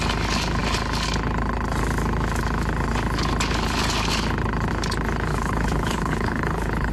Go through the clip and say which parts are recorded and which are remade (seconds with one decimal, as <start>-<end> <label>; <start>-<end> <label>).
0.0-5.3 recorded; 5.3-6.9 remade